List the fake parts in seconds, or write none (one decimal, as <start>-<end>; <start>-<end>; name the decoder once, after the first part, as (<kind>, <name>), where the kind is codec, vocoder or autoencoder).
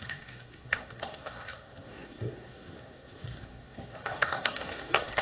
0.0-5.2 (codec, SNAC)